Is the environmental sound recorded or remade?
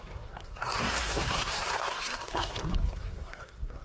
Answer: remade